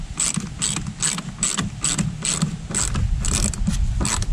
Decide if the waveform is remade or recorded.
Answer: recorded